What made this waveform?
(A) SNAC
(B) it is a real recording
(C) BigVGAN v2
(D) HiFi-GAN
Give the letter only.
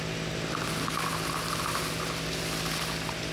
B